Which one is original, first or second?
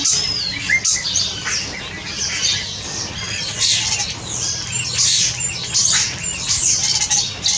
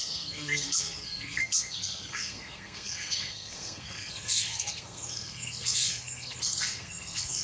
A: first